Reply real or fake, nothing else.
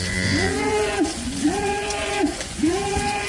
fake